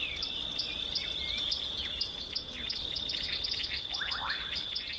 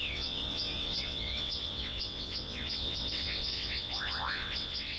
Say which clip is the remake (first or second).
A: second